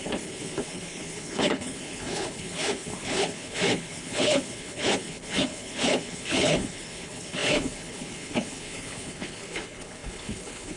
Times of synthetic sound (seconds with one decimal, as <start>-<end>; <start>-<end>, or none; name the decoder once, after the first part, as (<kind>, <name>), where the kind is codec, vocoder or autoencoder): 0.0-10.8 (codec, HILCodec)